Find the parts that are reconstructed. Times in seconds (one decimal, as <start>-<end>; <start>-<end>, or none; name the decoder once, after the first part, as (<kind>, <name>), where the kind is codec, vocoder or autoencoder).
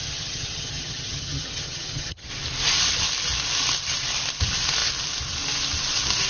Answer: 0.0-2.3 (vocoder, HiFi-GAN)